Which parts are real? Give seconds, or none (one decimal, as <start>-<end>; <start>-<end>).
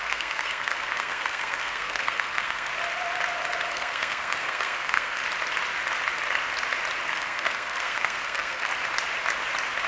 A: 2.7-3.7; 5.2-7.1; 8.7-9.9